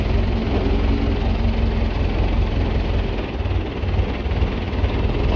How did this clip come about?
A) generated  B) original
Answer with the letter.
B